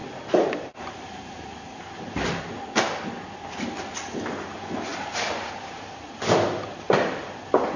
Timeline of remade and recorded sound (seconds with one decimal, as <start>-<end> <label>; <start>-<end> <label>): 0.0-2.4 remade; 2.4-4.9 recorded; 4.9-6.0 remade; 6.0-7.8 recorded